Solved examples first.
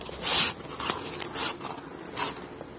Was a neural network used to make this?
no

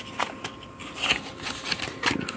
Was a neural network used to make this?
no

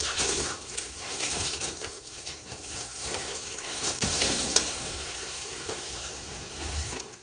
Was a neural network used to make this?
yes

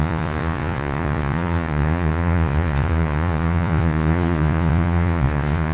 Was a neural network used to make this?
yes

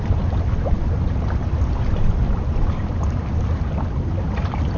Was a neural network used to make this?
no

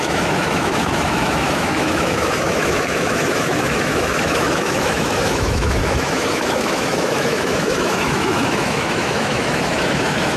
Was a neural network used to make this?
yes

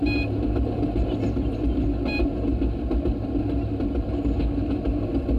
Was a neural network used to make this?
no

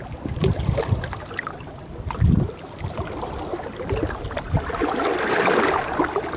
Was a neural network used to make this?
no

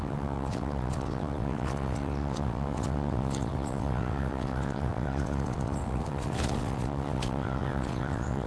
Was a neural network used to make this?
yes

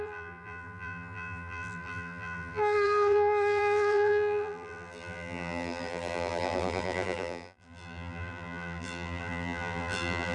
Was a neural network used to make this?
yes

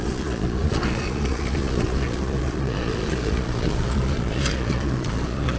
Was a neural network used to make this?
yes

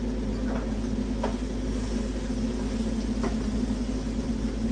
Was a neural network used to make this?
no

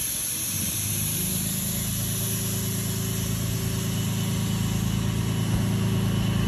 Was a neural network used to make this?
no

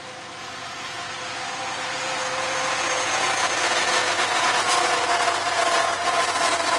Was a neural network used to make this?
yes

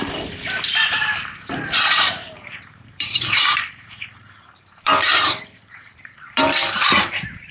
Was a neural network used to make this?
yes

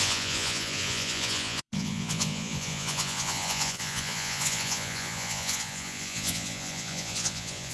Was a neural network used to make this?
yes